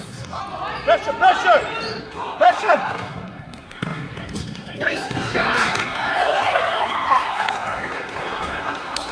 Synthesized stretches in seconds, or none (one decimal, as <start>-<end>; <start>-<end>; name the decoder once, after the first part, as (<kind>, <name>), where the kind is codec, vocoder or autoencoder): 0.0-0.4 (codec, SNAC); 2.0-9.1

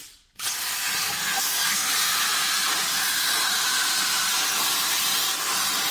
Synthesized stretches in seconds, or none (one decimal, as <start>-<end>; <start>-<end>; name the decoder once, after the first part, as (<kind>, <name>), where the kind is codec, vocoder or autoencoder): 1.0-1.9 (codec, SNAC)

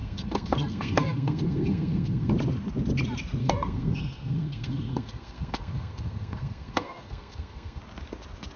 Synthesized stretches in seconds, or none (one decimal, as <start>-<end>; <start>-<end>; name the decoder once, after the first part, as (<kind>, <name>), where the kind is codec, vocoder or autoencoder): 0.0-2.3 (codec, SNAC); 3.4-7.8

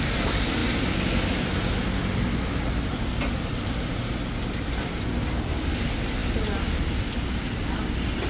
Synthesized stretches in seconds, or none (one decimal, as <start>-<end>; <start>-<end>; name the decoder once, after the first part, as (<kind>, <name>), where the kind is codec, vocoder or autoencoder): none